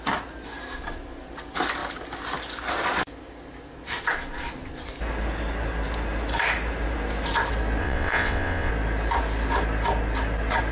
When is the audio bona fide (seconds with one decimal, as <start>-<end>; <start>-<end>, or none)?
0.0-7.8; 8.7-10.7